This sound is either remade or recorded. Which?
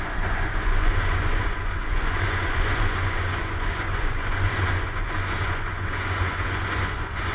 remade